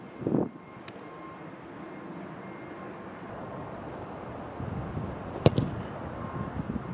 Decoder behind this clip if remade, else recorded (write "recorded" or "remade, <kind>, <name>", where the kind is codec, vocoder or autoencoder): recorded